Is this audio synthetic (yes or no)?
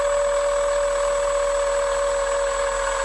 no